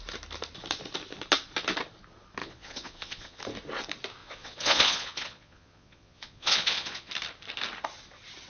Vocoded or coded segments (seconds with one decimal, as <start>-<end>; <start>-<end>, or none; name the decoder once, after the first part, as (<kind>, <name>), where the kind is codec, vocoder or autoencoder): 2.4-3.4 (vocoder, Vocos); 4.2-7.1